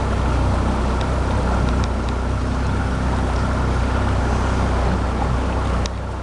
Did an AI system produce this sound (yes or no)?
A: no